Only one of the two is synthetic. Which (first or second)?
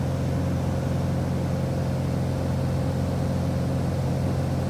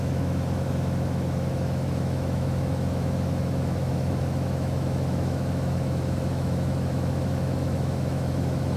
second